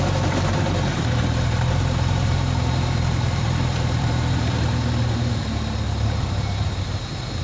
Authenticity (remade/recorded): remade